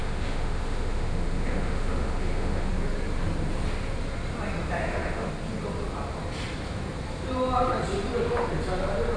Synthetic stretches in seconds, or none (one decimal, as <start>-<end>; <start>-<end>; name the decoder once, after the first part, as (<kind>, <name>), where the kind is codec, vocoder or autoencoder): 0.0-2.7 (autoencoder, DAC-VAE); 4.8-5.3